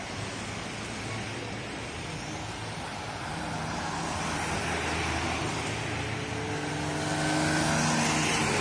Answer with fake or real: real